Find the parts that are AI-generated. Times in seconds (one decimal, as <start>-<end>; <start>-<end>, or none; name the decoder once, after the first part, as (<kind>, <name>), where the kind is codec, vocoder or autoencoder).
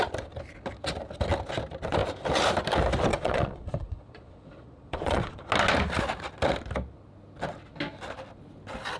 3.1-5.5 (vocoder, Vocos)